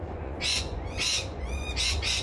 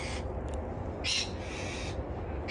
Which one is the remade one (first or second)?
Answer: first